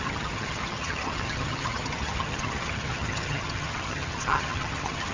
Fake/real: fake